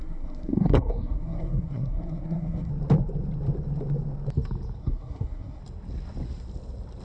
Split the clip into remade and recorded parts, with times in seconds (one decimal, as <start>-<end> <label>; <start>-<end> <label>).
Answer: 0.0-2.7 remade; 2.7-4.8 recorded; 4.8-5.6 remade; 5.6-7.0 recorded